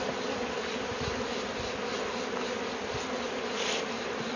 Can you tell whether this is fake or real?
real